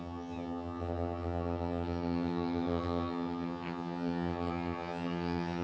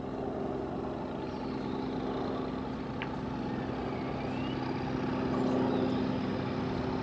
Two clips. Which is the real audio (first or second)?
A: second